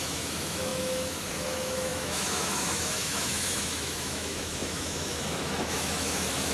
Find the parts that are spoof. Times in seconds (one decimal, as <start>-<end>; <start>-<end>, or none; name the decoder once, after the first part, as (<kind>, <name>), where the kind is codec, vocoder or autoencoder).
0.0-6.5 (autoencoder, DAC-VAE)